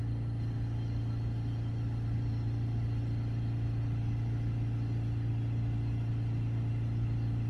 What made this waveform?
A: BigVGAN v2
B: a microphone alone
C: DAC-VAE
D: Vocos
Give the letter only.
A